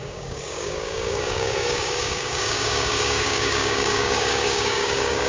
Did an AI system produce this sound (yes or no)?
yes